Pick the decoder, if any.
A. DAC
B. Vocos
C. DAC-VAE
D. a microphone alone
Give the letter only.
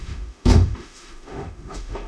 C